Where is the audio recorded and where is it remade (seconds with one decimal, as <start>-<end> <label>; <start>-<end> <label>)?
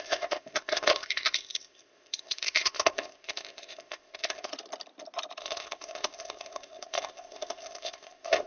0.0-4.5 remade; 4.5-5.4 recorded; 5.4-8.5 remade